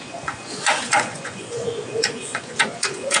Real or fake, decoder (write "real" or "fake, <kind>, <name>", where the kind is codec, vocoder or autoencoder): fake, vocoder, Vocos